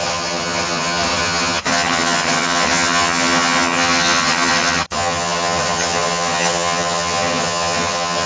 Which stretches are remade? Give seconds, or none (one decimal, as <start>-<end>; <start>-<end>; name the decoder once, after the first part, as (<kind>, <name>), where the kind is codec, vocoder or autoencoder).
0.0-8.3 (vocoder, HiFi-GAN)